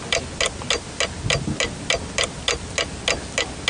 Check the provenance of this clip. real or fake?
real